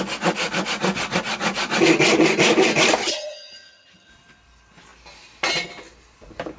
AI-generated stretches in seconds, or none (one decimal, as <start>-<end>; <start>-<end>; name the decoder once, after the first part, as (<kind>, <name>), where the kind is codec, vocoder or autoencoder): 3.0-4.1 (vocoder, HiFi-GAN)